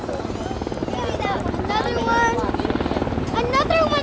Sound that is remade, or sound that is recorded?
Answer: recorded